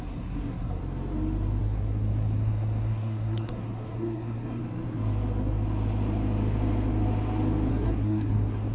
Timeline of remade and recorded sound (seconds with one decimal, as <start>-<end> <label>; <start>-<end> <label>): 0.0-0.8 remade; 0.8-1.6 recorded; 1.6-4.6 remade; 4.6-7.7 recorded; 7.7-8.7 remade